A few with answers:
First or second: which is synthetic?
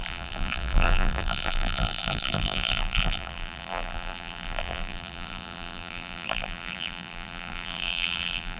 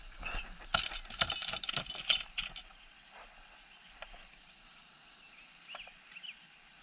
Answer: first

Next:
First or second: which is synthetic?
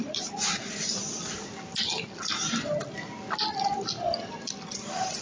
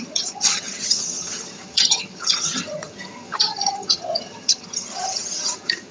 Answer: second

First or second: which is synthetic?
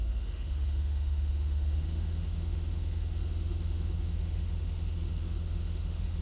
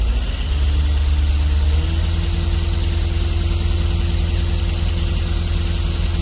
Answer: first